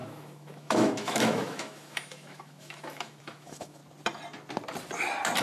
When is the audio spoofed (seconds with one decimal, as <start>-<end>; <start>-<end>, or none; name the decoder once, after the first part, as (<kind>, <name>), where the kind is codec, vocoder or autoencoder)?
0.0-3.8 (autoencoder, DAC-VAE)